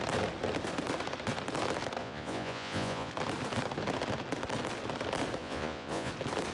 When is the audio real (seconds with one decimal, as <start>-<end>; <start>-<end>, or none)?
0.0-2.0; 3.1-5.4; 6.1-6.5